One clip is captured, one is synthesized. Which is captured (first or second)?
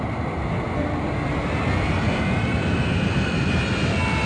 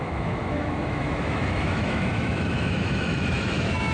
first